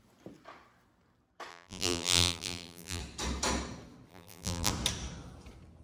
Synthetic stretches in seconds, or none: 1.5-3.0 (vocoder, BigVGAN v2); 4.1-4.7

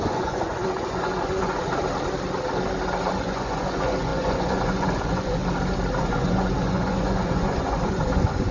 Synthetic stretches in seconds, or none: 0.0-1.7 (vocoder, Vocos); 3.1-5.4; 6.0-8.5

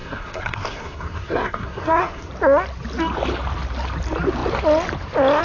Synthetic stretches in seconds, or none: 0.0-2.3 (codec, SNAC)

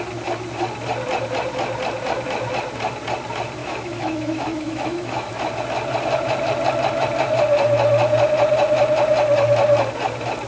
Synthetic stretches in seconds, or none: 3.6-5.3 (autoencoder, DAC-VAE)

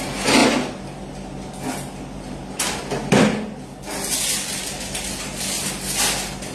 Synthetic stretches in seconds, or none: none

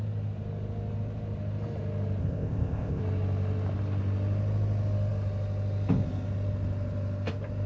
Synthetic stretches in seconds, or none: 2.2-3.0 (codec, ZipCodec)

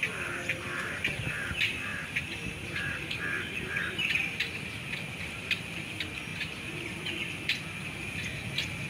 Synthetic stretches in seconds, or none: 1.9-3.2 (vocoder, BigVGAN v2); 6.3-6.8

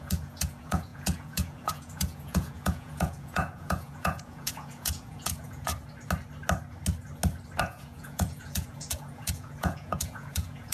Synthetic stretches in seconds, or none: 0.0-5.7 (vocoder, Vocos); 7.6-10.7